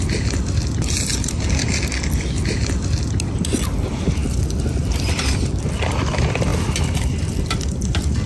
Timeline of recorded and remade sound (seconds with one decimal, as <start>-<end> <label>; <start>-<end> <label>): 0.0-8.3 recorded